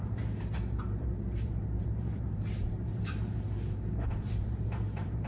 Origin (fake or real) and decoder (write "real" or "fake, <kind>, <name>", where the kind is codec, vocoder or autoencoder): fake, vocoder, BigVGAN v2